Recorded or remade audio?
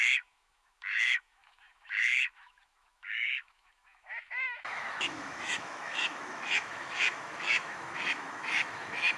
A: remade